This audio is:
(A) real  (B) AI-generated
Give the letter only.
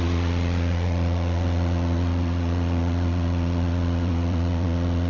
B